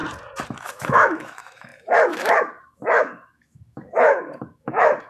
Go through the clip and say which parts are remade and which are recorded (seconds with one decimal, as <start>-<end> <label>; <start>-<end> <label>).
0.0-0.6 recorded; 0.6-5.1 remade